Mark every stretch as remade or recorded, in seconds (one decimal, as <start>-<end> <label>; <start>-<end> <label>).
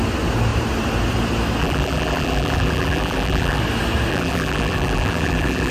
0.0-1.6 recorded; 1.6-3.6 remade; 3.6-4.1 recorded; 4.1-5.7 remade